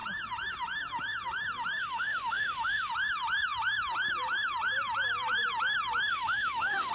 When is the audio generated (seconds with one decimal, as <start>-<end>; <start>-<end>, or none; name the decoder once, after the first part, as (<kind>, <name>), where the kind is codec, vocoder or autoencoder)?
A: 1.8-2.9 (autoencoder, DAC-VAE); 6.1-6.9